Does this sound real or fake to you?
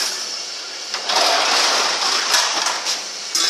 real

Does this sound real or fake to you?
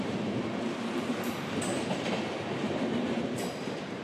fake